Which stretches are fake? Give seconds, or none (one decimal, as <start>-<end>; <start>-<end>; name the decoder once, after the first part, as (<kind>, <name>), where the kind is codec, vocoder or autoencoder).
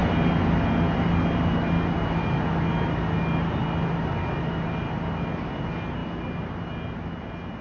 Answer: none